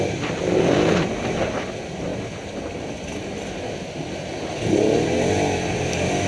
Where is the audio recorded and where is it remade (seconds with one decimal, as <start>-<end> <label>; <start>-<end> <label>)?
0.0-6.3 recorded